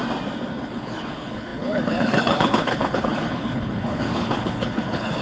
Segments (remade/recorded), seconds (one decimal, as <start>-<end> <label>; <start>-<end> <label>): 0.0-0.6 recorded; 0.6-5.2 remade